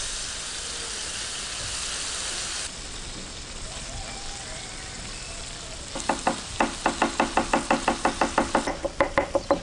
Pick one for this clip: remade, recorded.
recorded